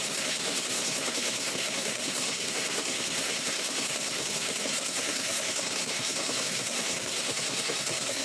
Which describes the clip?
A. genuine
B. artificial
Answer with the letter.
B